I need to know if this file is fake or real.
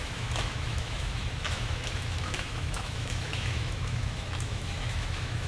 fake